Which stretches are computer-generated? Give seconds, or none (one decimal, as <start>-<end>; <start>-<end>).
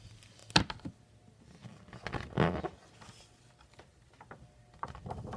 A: none